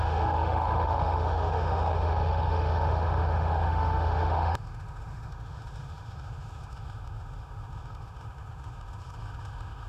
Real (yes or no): no